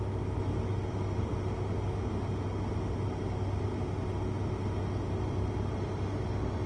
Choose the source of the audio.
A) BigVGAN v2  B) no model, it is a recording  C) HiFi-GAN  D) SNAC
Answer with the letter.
B